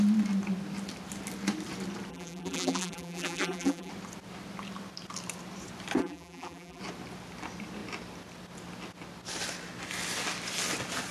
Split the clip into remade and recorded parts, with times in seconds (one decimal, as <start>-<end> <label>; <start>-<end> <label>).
0.0-2.1 recorded; 2.1-3.9 remade; 3.9-6.0 recorded; 6.0-6.8 remade; 6.8-11.1 recorded